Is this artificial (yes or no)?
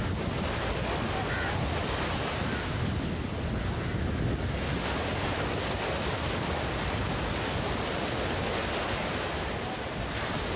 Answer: no